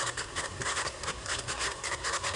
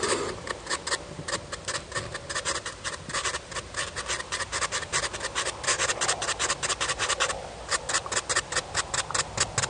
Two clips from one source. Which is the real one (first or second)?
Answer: second